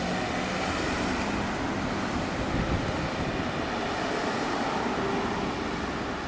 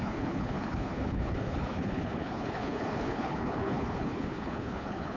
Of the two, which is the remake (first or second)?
second